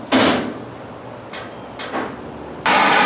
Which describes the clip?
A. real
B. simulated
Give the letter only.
A